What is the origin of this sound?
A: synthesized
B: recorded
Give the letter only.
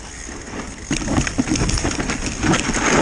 B